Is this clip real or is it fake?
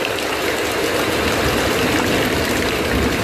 real